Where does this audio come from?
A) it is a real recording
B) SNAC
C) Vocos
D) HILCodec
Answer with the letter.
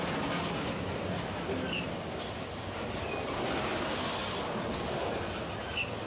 A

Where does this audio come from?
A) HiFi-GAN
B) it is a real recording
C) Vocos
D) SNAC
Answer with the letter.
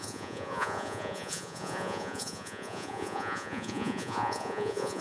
C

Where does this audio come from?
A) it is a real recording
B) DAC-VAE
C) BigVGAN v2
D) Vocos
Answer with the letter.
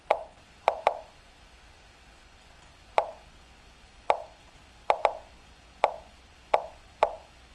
D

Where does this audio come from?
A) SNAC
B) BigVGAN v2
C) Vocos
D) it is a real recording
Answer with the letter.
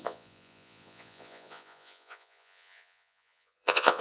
C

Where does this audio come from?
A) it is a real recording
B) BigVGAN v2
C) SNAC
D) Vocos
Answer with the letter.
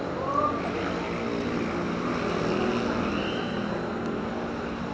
A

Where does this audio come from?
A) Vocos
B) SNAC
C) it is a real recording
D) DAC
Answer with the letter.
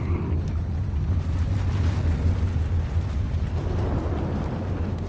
C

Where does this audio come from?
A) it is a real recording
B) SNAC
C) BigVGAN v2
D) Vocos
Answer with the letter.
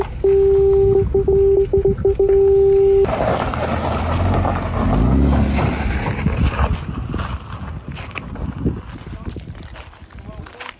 A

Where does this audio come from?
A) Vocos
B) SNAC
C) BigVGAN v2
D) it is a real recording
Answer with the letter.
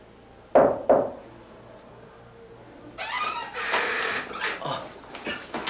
D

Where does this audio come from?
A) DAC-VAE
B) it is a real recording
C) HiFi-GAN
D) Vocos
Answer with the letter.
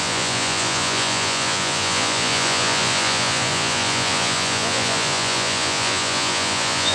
D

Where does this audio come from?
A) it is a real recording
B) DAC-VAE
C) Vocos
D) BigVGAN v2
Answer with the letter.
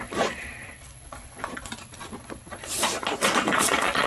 C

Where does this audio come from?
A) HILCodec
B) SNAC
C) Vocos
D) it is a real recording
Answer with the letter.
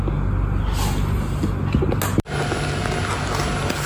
D